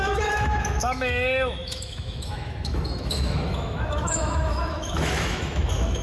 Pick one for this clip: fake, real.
fake